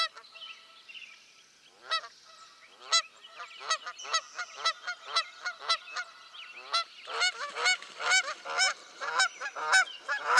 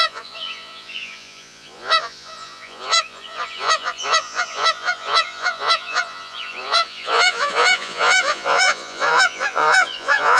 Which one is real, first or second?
first